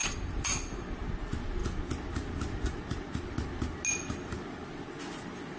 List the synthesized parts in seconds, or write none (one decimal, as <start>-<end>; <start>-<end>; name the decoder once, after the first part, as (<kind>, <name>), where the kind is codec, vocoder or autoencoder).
none